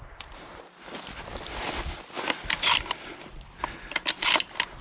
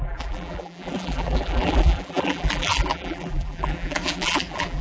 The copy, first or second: second